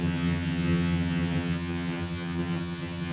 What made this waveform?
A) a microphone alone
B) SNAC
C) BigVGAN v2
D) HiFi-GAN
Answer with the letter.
D